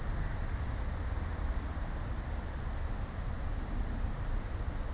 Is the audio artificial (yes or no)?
no